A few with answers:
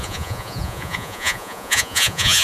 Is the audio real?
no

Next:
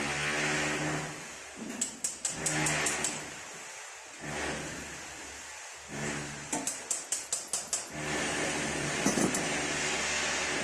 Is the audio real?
yes